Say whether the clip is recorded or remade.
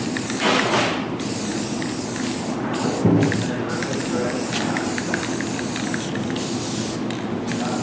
recorded